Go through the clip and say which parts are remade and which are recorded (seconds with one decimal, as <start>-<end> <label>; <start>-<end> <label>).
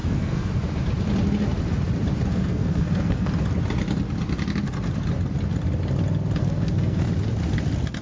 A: 0.0-0.5 remade; 0.5-2.3 recorded; 2.3-3.3 remade; 3.3-6.4 recorded; 6.4-7.0 remade; 7.0-8.0 recorded